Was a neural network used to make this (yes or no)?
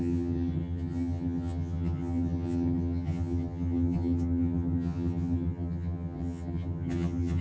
yes